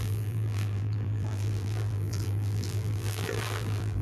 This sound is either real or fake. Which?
fake